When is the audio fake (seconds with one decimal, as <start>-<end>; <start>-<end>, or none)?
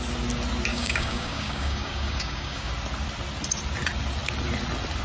0.7-2.7